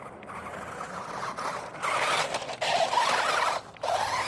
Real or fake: real